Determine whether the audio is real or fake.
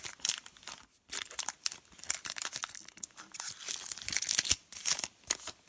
real